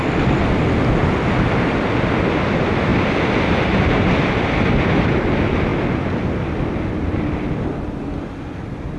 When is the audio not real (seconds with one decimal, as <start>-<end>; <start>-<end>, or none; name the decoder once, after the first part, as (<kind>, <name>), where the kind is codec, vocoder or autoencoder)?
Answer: none